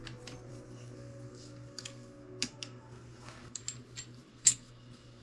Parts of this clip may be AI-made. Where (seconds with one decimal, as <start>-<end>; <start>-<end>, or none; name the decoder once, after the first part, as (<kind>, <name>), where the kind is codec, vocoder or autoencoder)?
0.5-3.6 (codec, SNAC); 4.3-5.2